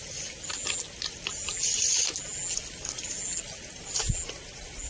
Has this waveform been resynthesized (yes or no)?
no